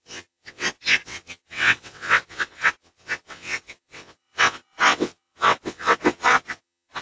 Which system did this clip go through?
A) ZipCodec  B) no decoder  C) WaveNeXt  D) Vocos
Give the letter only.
C